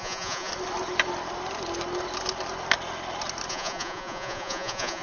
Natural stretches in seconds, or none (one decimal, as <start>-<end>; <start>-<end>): 0.5-3.5